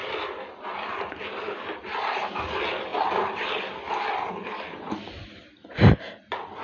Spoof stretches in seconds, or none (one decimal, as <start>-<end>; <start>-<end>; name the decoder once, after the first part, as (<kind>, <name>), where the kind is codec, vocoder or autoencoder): 0.0-2.3 (vocoder, BigVGAN v2); 2.9-3.9